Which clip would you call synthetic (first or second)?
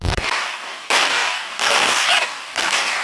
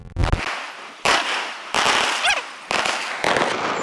first